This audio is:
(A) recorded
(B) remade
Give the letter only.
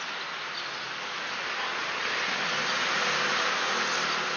A